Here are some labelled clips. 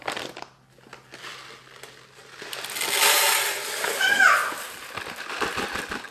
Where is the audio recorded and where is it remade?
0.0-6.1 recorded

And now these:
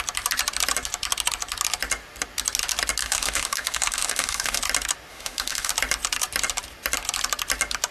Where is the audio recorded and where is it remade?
0.0-3.0 recorded; 3.0-4.6 remade; 4.6-5.1 recorded; 5.1-5.7 remade; 5.7-7.9 recorded

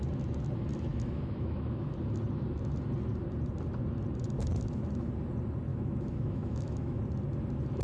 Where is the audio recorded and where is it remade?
0.0-0.9 recorded; 0.9-1.9 remade; 1.9-5.7 recorded; 5.7-7.0 remade; 7.0-7.8 recorded